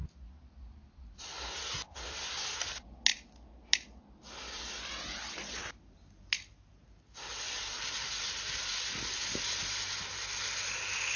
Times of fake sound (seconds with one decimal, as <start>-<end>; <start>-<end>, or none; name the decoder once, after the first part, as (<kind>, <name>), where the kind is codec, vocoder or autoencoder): none